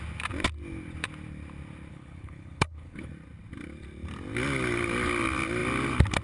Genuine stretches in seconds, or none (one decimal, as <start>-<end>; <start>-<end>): 0.0-1.9; 3.1-6.2